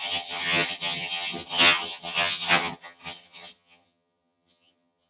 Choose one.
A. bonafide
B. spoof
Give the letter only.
B